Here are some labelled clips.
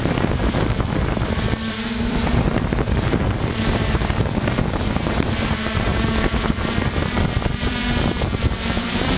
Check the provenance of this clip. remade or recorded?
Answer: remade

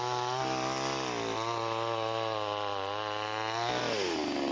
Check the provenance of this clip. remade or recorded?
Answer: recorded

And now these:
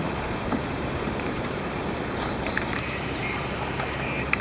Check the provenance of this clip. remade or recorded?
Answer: remade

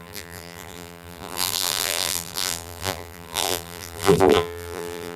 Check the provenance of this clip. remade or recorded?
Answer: remade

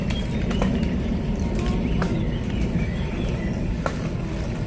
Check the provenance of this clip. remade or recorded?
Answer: recorded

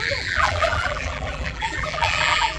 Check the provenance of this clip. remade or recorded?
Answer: remade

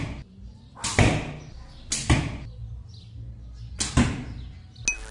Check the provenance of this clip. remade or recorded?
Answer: recorded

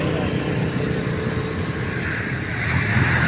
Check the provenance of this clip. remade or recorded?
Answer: recorded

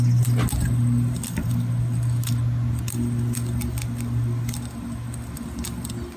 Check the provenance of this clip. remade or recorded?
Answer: recorded